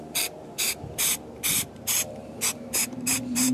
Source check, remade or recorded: remade